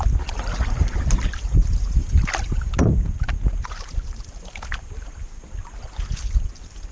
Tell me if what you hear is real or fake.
real